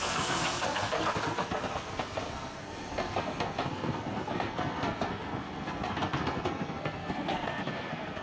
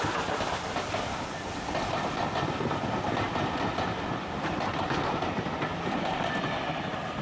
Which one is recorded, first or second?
second